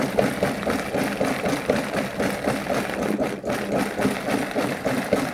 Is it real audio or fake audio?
real